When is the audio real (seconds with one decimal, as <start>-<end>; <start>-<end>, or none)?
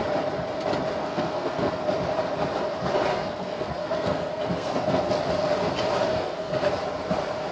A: 0.0-1.0; 1.8-3.1; 5.0-6.1; 6.7-7.5